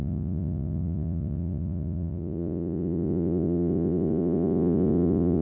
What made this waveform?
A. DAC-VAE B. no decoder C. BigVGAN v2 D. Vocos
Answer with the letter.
D